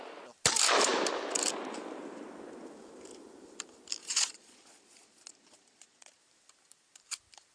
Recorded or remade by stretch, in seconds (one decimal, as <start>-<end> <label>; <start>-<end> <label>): 0.0-4.0 recorded; 4.0-6.2 remade; 6.2-7.5 recorded

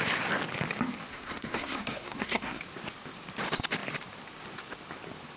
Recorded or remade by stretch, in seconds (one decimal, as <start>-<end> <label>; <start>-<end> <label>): 0.0-1.1 recorded; 1.1-2.6 remade; 2.6-5.4 recorded

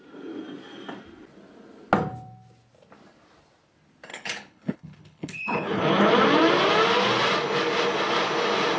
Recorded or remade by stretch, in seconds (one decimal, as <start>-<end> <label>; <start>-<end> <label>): 0.0-4.1 recorded; 4.1-5.8 remade; 5.8-8.8 recorded

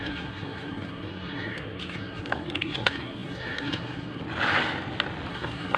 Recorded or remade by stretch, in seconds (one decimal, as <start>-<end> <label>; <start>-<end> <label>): 0.0-4.2 remade; 4.2-5.3 recorded; 5.3-5.8 remade